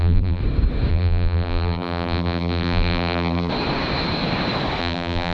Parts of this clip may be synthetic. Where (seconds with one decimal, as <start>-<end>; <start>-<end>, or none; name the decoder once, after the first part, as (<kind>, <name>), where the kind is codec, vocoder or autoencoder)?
0.0-0.4 (vocoder, BigVGAN v2); 0.9-3.5; 4.8-5.3